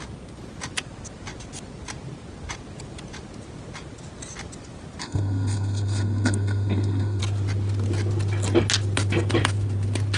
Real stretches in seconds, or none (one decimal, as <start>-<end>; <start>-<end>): 0.0-5.0; 7.2-10.2